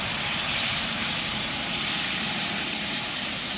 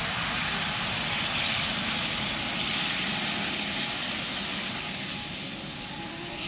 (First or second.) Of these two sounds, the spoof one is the first